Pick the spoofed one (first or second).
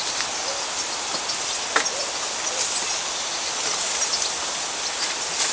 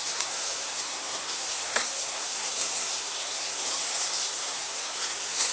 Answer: second